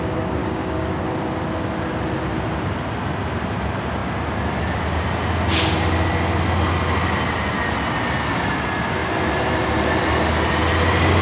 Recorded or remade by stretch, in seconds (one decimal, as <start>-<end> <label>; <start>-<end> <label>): 0.0-0.4 recorded; 0.4-1.0 remade; 1.0-11.2 recorded